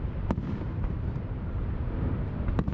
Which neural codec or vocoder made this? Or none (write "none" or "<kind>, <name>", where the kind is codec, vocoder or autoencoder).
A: vocoder, BigVGAN v2